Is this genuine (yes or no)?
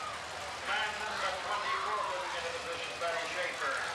yes